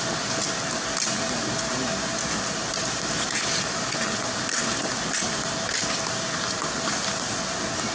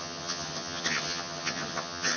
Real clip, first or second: first